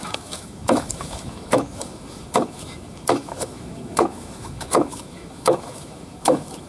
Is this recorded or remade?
remade